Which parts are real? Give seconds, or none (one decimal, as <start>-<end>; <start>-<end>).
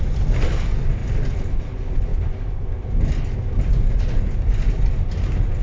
0.0-1.0; 1.6-5.6